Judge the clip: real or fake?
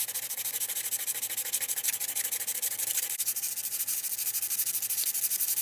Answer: real